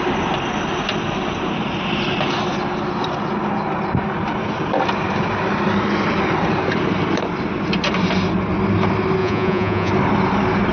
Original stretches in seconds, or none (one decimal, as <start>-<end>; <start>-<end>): 0.0-9.2; 9.9-10.7